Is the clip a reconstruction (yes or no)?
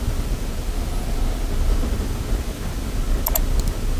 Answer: no